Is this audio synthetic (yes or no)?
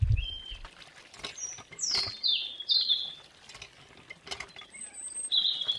no